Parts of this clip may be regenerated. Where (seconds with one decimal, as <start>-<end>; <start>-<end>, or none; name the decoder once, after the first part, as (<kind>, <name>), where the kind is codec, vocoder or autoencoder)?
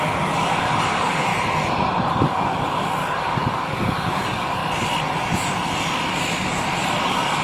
0.0-1.3 (codec, DAC); 2.1-4.6; 7.0-7.4